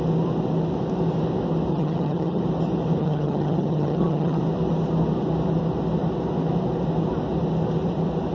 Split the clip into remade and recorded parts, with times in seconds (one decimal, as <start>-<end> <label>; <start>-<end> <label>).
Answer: 0.0-1.7 recorded; 1.7-2.4 remade; 2.4-3.0 recorded; 3.0-4.4 remade; 4.4-8.3 recorded